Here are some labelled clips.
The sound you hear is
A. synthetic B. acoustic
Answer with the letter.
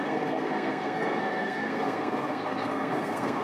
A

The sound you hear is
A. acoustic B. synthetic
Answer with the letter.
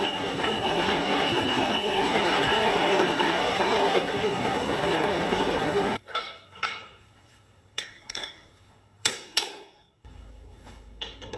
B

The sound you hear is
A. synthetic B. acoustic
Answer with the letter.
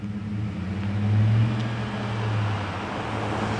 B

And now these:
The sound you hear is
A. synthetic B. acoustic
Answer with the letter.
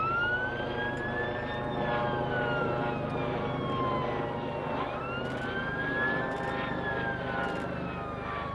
B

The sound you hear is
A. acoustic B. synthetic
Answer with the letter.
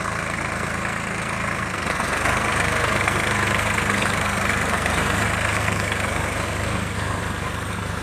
B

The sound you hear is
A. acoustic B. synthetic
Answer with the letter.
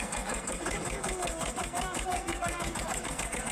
B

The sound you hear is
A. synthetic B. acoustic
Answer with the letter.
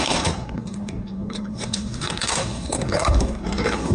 A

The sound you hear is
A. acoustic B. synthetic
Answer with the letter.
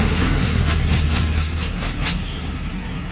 B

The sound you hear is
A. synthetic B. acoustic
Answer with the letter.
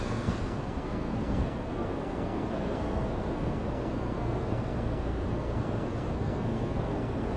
A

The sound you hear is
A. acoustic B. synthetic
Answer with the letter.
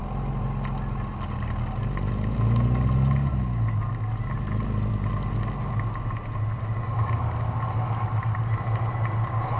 A